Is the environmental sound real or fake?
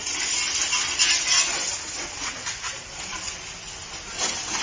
real